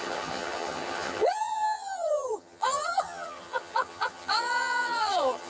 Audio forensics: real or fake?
fake